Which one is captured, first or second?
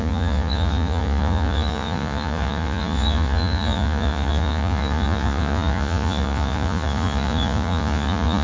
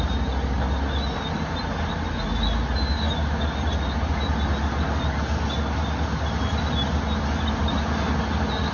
second